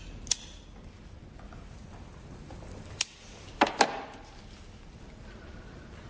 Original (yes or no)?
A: yes